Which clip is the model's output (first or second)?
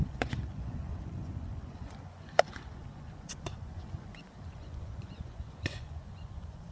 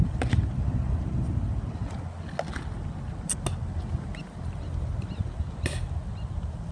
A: first